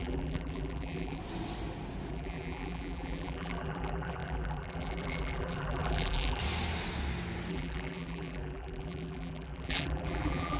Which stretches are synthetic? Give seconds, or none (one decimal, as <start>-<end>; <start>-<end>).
0.0-1.2; 2.1-6.4; 7.5-10.6